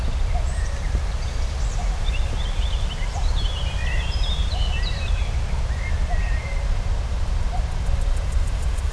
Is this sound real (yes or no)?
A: yes